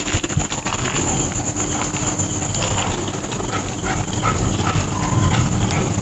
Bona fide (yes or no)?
yes